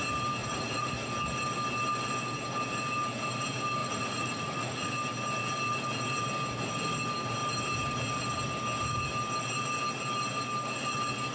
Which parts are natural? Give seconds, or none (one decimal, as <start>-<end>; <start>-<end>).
0.0-0.4; 0.9-3.8; 4.9-11.3